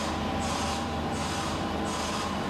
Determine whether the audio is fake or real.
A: real